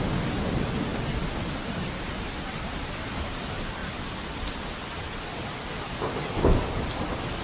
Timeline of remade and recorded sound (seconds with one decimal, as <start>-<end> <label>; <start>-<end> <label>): 0.0-0.9 recorded; 0.9-1.7 remade; 1.7-3.8 recorded; 3.8-5.8 remade; 5.8-7.4 recorded

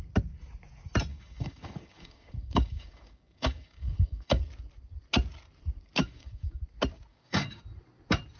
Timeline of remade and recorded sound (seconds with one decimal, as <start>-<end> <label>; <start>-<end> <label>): 0.0-1.1 recorded; 1.1-4.4 remade; 4.4-6.0 recorded; 6.0-6.6 remade; 6.6-7.1 recorded; 7.1-7.6 remade; 7.6-8.4 recorded

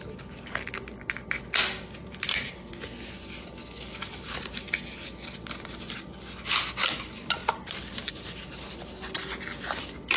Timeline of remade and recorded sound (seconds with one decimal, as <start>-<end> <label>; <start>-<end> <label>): 0.0-2.0 recorded; 2.0-2.7 remade; 2.7-7.4 recorded; 7.4-8.1 remade; 8.1-10.2 recorded

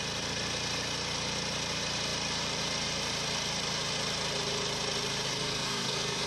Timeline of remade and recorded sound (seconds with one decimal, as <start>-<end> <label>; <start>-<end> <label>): 0.0-5.3 recorded; 5.3-6.3 remade

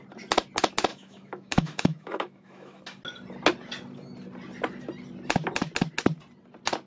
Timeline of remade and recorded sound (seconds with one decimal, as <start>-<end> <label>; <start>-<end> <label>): 0.0-0.9 recorded; 0.9-2.8 remade; 2.8-6.9 recorded